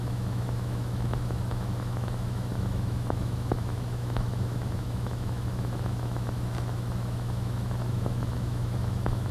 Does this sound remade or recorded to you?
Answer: remade